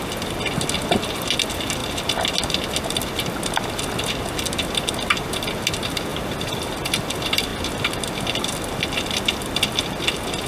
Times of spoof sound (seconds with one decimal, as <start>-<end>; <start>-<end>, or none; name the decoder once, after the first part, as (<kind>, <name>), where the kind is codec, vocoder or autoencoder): none